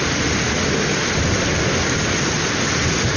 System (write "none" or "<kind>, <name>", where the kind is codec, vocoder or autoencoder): none